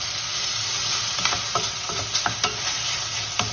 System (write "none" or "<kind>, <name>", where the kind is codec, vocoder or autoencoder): none